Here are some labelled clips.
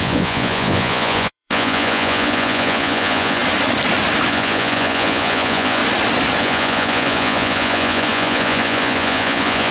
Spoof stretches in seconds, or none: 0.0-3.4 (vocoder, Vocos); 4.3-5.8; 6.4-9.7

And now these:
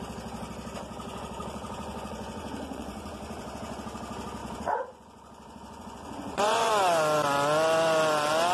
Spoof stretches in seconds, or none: 1.1-3.8 (vocoder, Vocos); 4.4-6.7

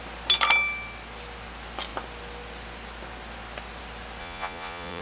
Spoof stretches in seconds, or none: 4.2-5.0 (vocoder, Vocos)

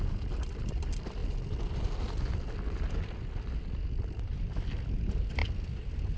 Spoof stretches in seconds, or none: none

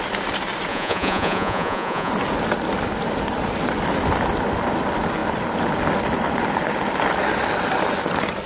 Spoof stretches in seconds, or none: 0.7-2.1 (vocoder, Vocos)

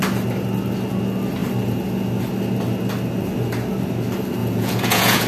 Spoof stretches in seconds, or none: 4.4-5.3 (vocoder, Vocos)

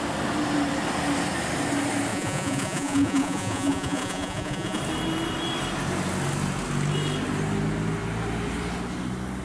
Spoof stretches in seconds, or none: 2.1-4.8 (vocoder, Vocos)